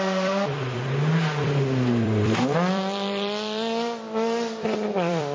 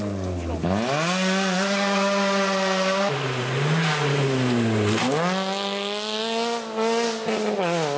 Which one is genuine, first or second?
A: second